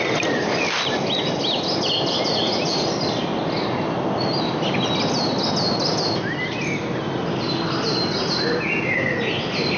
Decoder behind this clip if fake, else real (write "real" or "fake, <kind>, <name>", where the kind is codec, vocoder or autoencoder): real